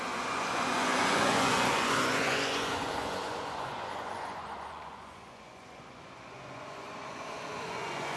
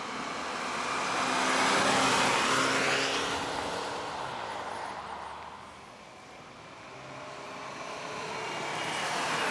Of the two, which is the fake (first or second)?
first